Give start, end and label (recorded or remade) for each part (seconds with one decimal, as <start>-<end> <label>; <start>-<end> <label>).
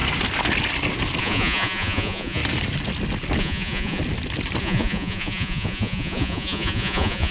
0.0-1.2 recorded; 1.2-2.4 remade; 2.4-3.4 recorded; 3.4-4.0 remade; 4.0-4.6 recorded; 4.6-7.3 remade